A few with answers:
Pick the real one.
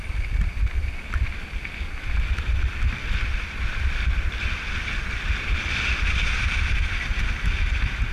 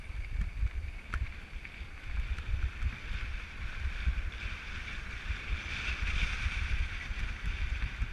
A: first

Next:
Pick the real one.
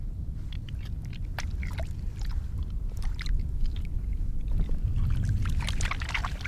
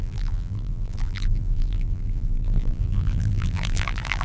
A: first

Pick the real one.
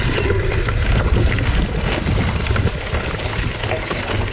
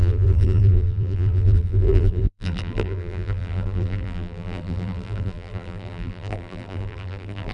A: first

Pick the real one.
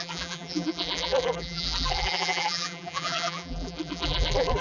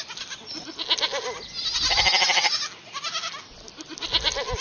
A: second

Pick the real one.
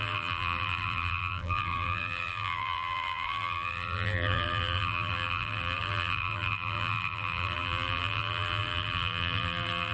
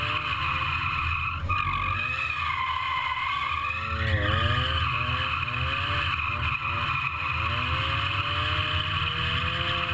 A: second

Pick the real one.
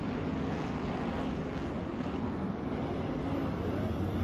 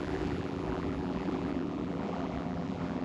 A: first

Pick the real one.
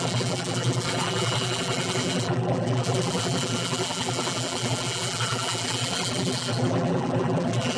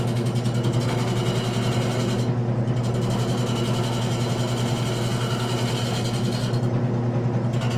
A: second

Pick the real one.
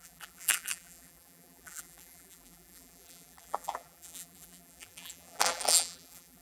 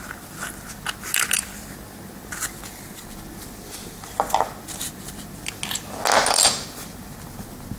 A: second